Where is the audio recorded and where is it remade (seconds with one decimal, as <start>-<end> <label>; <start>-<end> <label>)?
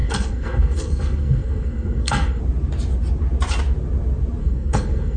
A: 0.0-2.4 remade; 2.4-4.4 recorded; 4.4-5.2 remade